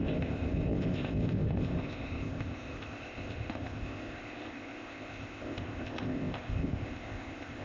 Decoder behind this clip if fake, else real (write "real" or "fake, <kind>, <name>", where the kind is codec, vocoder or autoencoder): fake, codec, ZipCodec